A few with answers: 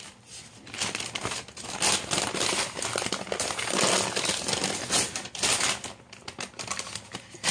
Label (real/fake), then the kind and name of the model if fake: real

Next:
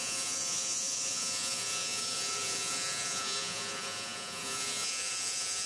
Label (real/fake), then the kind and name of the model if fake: fake, vocoder, Vocos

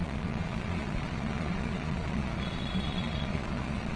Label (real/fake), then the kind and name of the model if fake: fake, vocoder, Vocos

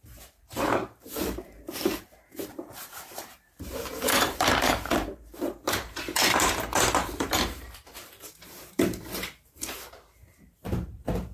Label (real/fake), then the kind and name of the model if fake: fake, vocoder, BigVGAN v2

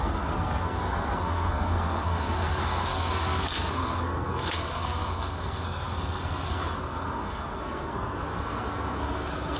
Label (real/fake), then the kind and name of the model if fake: fake, codec, SNAC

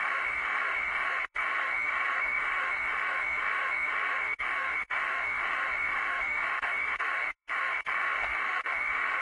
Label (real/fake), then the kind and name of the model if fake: fake, autoencoder, DAC-VAE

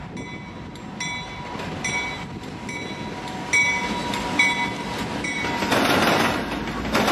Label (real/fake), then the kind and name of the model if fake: real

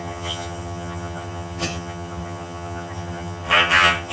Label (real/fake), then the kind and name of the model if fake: fake, vocoder, HiFi-GAN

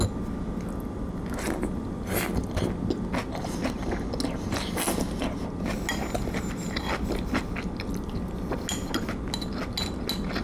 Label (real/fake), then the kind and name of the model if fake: real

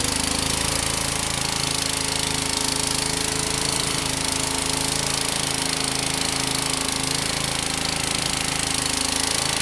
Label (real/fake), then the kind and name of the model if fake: real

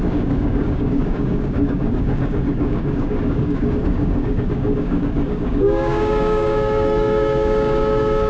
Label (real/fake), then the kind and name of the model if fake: fake, codec, DAC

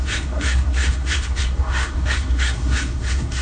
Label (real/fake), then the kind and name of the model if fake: fake, codec, SNAC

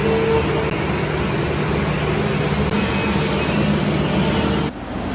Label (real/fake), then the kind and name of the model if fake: real